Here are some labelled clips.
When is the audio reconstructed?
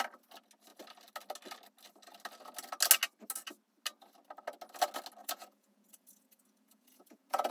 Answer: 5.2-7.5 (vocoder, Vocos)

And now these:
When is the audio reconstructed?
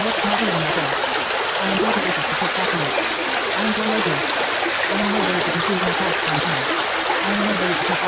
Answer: none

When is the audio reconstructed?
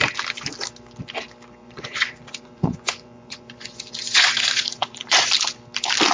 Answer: 1.6-5.3 (vocoder, Vocos)